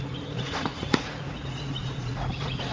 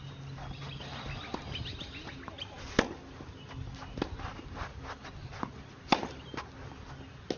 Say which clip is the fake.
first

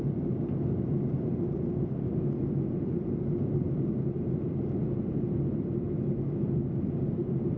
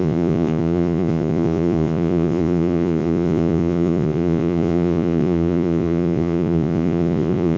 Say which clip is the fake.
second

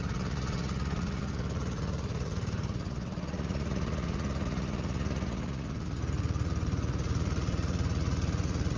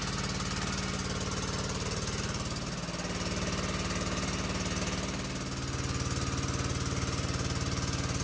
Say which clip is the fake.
first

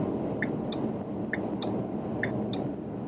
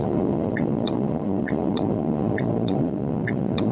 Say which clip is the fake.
second